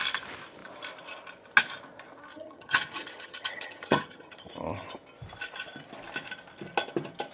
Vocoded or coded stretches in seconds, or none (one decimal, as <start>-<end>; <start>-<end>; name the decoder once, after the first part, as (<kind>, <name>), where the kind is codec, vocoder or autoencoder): 2.3-4.5 (vocoder, HiFi-GAN)